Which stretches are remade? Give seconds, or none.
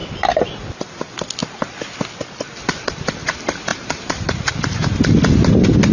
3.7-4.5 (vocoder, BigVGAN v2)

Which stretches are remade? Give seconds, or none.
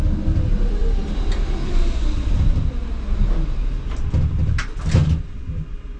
none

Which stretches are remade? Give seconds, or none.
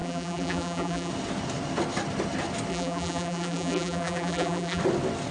0.0-1.1 (vocoder, BigVGAN v2); 2.7-4.8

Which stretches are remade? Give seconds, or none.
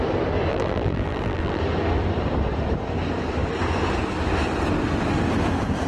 0.5-1.6 (vocoder, BigVGAN v2)